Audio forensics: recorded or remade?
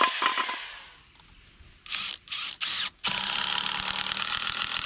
recorded